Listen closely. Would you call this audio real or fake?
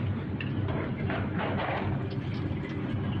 real